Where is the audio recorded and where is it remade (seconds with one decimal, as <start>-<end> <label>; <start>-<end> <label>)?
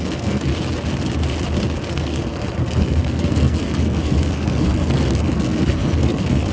0.0-0.5 remade; 0.5-1.9 recorded; 1.9-6.5 remade